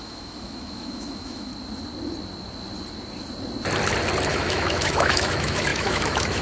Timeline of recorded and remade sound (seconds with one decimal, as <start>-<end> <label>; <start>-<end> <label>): 0.0-1.5 remade; 1.5-4.3 recorded; 4.3-6.4 remade